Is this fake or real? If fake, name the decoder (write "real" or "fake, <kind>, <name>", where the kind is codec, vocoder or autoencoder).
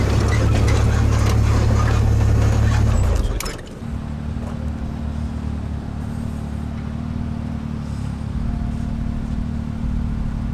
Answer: real